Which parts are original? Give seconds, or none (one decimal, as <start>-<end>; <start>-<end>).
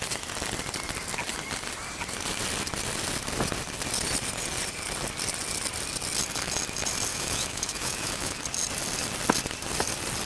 0.0-7.1; 8.4-10.3